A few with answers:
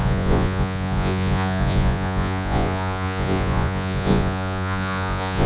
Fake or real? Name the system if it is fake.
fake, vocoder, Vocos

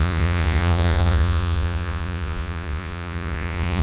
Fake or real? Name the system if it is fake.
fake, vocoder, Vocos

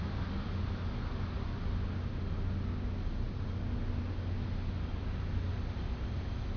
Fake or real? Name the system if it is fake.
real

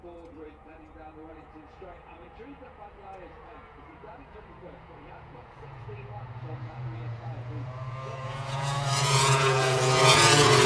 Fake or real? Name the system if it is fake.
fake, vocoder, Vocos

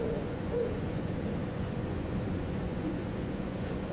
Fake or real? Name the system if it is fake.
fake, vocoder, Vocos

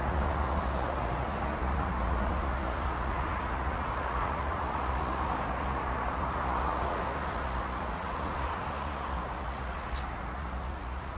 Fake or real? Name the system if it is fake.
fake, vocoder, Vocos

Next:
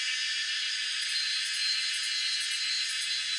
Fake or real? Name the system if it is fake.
real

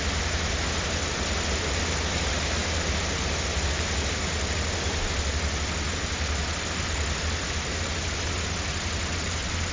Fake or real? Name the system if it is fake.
real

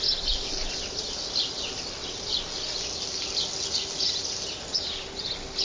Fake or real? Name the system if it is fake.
real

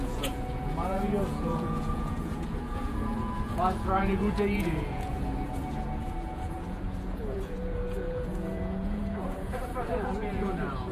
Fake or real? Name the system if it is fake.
fake, vocoder, Vocos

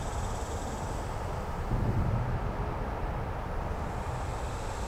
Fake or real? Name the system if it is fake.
real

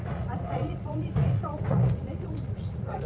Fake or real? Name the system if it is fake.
fake, vocoder, Vocos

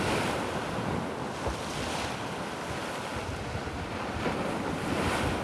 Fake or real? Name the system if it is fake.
real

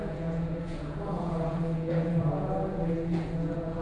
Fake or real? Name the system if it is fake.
fake, vocoder, Vocos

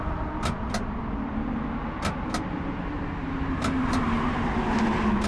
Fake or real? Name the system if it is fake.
real